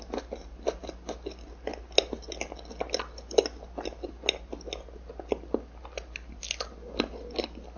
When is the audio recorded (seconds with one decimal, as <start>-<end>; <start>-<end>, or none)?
0.0-7.8